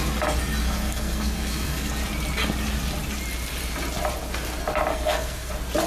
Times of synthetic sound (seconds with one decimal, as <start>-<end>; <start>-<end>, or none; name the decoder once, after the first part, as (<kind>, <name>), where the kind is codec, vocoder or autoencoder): 0.6-1.9 (codec, SNAC); 4.9-5.5